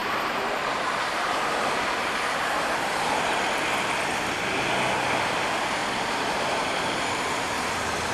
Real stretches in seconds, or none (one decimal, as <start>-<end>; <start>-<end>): 1.1-5.8